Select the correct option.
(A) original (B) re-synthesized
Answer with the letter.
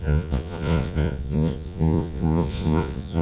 B